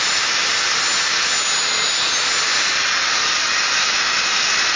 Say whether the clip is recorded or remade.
recorded